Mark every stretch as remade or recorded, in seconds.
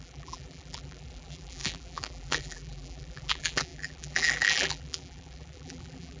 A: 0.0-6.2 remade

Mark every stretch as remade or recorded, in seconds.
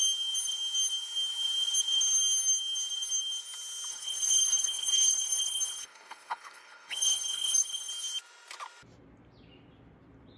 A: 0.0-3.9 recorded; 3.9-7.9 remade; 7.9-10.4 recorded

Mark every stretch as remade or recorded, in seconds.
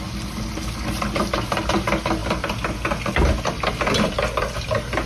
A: 0.0-5.1 recorded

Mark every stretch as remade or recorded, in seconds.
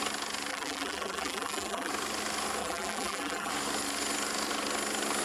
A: 0.0-0.5 recorded; 0.5-1.9 remade; 1.9-2.6 recorded; 2.6-3.5 remade; 3.5-5.2 recorded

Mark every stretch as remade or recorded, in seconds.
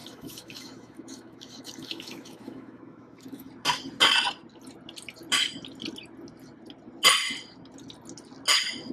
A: 0.0-3.5 remade; 3.5-8.9 recorded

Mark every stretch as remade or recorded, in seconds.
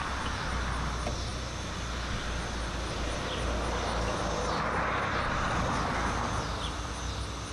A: 0.0-7.5 recorded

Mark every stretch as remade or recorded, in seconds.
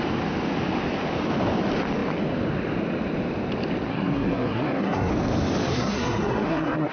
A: 0.0-3.9 recorded; 3.9-5.1 remade; 5.1-5.7 recorded; 5.7-6.9 remade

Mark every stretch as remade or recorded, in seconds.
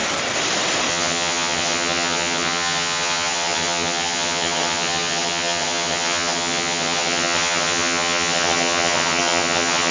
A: 0.0-0.9 recorded; 0.9-9.9 remade